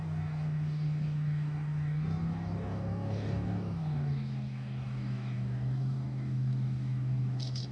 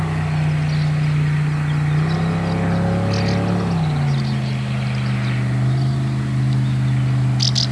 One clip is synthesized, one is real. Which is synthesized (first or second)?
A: first